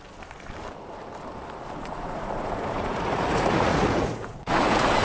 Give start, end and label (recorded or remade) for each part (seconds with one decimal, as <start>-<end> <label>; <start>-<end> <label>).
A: 0.0-1.8 recorded; 1.8-5.0 remade